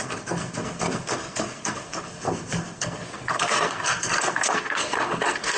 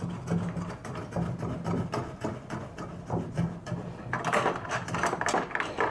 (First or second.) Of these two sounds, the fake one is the first